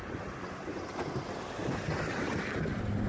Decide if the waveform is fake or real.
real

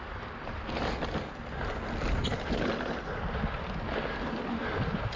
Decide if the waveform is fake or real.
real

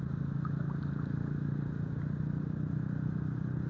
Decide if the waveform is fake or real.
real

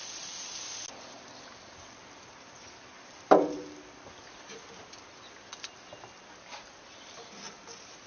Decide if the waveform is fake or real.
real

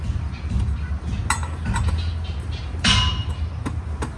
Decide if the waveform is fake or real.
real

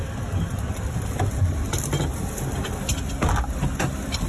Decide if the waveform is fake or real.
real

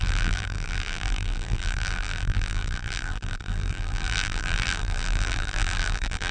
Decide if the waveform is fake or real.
fake